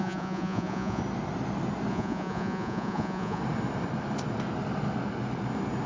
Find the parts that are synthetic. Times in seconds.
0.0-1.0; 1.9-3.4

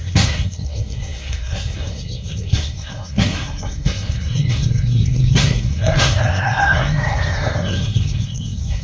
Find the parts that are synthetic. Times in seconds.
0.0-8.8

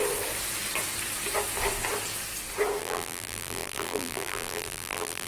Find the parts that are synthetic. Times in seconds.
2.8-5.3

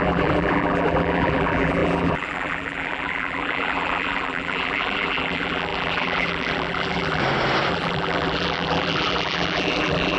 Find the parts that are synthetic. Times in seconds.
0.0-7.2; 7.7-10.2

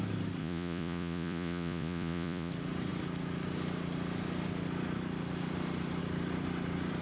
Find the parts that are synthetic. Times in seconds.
0.4-2.5

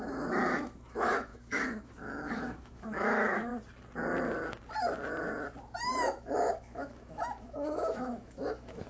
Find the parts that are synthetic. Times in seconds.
0.0-3.5; 5.8-8.9

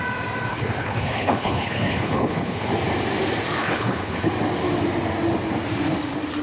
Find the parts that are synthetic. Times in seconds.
0.5-2.7; 3.6-4.3

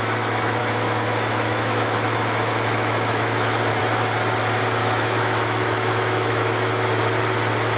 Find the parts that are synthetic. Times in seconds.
0.6-3.8; 4.8-6.7